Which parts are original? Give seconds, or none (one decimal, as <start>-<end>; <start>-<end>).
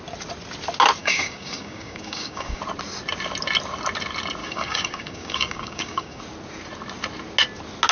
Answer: 0.0-1.0; 2.6-4.4; 6.2-7.9